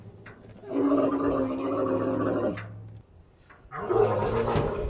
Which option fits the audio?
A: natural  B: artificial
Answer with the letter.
A